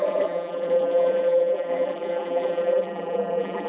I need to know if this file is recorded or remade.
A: remade